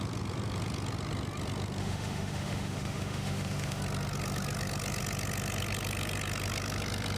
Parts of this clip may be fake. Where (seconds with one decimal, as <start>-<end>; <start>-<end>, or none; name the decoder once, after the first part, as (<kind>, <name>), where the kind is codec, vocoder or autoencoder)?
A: 1.8-3.8 (autoencoder, DAC-VAE)